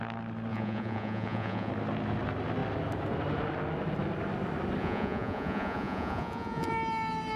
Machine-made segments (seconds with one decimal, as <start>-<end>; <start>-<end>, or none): 0.5-1.7; 4.8-6.7